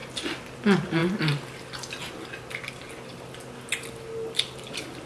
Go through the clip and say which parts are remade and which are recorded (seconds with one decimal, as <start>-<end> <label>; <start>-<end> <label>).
0.0-5.1 recorded